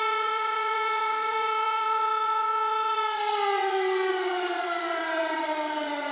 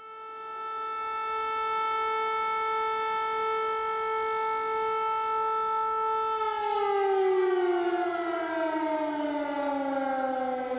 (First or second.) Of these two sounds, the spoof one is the first